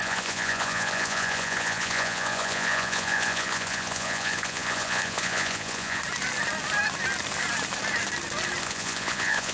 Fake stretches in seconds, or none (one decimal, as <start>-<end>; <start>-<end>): 0.0-6.0; 8.6-9.5